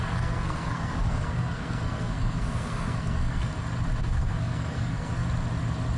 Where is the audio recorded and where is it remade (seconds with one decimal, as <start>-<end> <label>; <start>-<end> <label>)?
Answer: 0.0-3.5 remade; 3.5-4.0 recorded; 4.0-5.1 remade; 5.1-6.0 recorded